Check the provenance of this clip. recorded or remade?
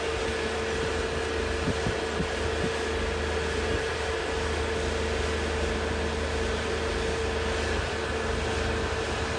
recorded